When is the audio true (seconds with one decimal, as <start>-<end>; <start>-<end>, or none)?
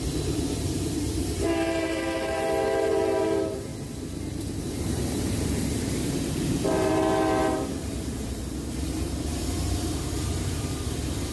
3.7-4.6